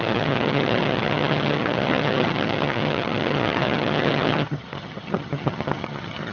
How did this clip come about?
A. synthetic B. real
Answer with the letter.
A